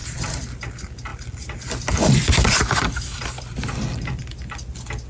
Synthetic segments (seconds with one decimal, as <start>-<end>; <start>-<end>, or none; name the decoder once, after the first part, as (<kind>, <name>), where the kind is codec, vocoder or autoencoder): 0.0-0.7 (vocoder, BigVGAN v2); 1.1-4.2